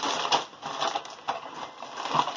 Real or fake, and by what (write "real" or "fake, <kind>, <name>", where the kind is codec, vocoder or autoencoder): real